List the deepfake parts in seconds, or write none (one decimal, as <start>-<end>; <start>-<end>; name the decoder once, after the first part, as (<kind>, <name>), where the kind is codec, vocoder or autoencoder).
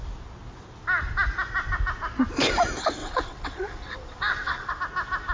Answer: 3.0-4.8 (vocoder, WaveNeXt)